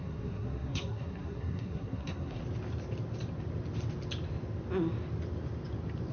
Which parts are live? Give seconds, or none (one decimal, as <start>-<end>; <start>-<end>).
2.4-6.1